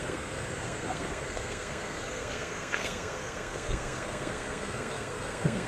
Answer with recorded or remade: remade